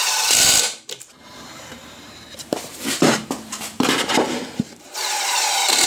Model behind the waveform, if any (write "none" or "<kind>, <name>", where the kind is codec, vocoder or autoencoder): vocoder, BigVGAN v2